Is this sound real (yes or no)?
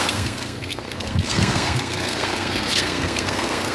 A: no